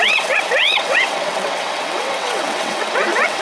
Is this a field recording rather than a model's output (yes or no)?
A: no